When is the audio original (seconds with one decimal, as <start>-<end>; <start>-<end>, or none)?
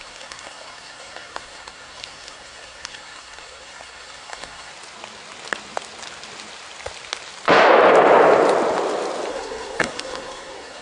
4.7-9.3